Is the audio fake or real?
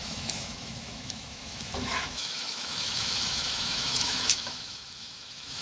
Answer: fake